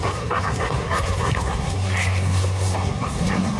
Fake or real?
fake